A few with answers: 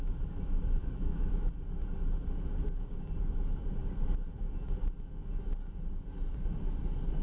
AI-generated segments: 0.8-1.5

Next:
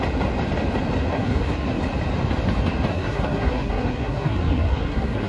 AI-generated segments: 1.1-1.8; 2.9-5.3

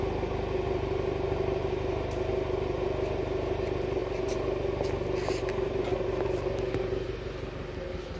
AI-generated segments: none

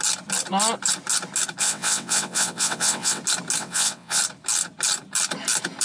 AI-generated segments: 1.6-3.2; 3.6-4.2

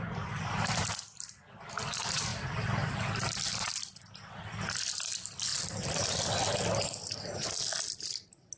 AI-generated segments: 5.5-7.1